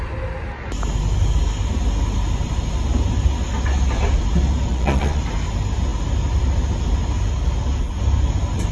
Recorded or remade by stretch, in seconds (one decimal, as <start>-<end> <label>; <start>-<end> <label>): 0.0-4.7 recorded; 4.7-5.2 remade; 5.2-8.7 recorded